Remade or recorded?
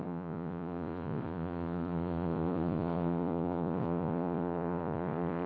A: remade